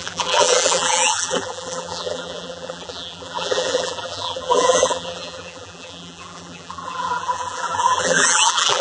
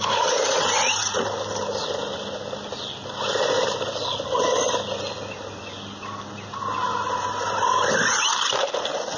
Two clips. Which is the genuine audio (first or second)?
second